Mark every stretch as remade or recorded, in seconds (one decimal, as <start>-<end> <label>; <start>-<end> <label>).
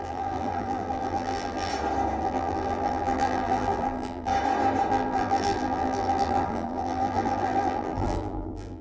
0.0-1.7 remade; 1.7-2.2 recorded; 2.2-4.3 remade; 4.3-4.9 recorded; 4.9-8.8 remade